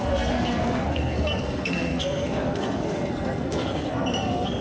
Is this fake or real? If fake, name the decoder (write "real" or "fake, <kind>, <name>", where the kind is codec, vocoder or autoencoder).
fake, codec, SNAC